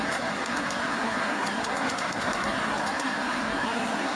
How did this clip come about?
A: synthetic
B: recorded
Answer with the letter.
A